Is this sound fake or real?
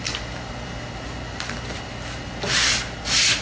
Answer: real